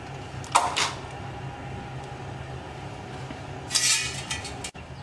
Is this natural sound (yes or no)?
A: yes